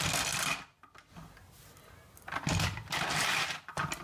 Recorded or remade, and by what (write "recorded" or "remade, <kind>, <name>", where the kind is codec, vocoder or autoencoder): recorded